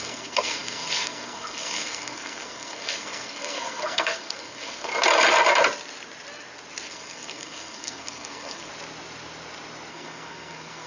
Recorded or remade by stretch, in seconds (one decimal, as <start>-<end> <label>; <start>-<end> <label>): 0.0-4.9 remade; 4.9-6.9 recorded; 6.9-8.7 remade; 8.7-9.9 recorded; 9.9-10.9 remade